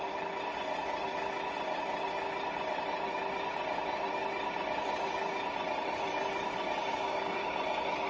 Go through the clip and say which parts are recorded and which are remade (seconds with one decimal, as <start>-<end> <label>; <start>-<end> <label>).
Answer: 0.0-6.9 recorded; 6.9-7.5 remade; 7.5-8.1 recorded

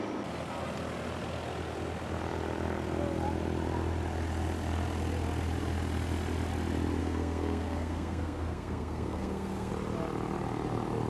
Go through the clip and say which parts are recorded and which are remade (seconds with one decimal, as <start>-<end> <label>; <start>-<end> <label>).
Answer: 0.0-7.0 recorded; 7.0-9.7 remade; 9.7-11.1 recorded

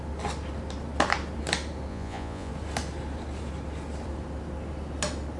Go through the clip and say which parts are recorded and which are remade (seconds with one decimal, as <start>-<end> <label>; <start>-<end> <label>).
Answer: 0.0-1.9 recorded; 1.9-2.5 remade; 2.5-5.4 recorded

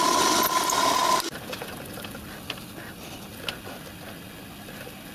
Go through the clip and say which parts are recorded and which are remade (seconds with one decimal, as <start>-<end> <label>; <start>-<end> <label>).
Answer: 0.0-5.1 recorded

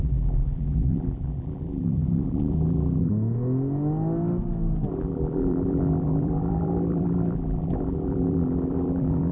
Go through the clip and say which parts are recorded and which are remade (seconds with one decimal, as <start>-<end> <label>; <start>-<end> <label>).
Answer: 0.0-3.1 remade; 3.1-4.9 recorded; 4.9-9.3 remade

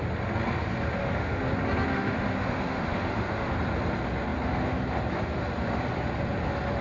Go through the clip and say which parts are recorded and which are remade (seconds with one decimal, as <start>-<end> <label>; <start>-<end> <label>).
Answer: 0.0-1.0 recorded; 1.0-1.5 remade; 1.5-1.9 recorded; 1.9-3.5 remade; 3.5-6.8 recorded

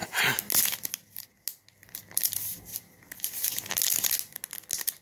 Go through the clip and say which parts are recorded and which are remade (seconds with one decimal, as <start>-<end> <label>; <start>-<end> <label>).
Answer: 0.0-1.8 recorded; 1.8-2.7 remade; 2.7-5.0 recorded

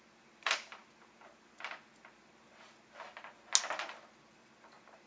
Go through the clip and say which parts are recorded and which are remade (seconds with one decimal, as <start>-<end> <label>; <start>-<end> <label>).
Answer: 0.0-0.8 remade; 0.8-3.9 recorded; 3.9-5.1 remade